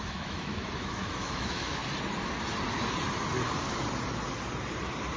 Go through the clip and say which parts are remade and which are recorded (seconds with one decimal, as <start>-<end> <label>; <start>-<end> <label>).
0.0-1.8 remade; 1.8-5.2 recorded